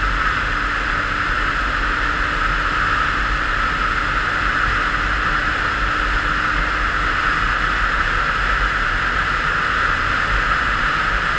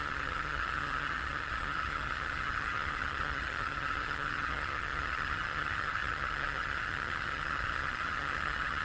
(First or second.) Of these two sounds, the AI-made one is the second